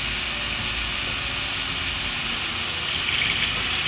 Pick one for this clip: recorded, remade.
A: recorded